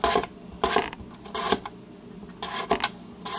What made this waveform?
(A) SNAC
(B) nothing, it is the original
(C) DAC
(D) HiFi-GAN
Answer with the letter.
B